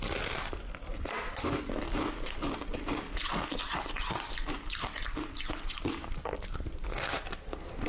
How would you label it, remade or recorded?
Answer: remade